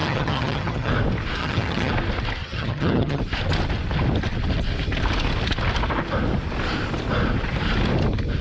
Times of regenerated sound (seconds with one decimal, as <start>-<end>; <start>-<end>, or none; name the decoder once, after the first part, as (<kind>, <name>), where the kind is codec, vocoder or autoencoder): 0.0-0.9 (vocoder, HiFi-GAN); 1.4-1.9; 2.4-3.2